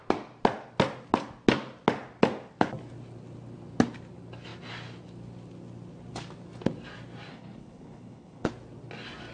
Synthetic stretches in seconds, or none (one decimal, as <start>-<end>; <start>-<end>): 7.3-8.5